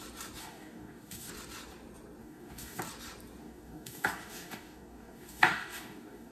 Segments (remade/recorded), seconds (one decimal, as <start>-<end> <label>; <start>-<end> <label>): 0.0-0.4 recorded; 0.4-1.3 remade; 1.3-2.2 recorded; 2.2-2.8 remade; 2.8-3.4 recorded; 3.4-6.3 remade